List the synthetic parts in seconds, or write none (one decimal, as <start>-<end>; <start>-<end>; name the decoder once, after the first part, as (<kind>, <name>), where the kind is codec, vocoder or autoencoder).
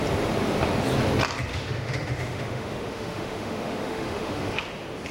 1.5-4.6 (autoencoder, DAC-VAE)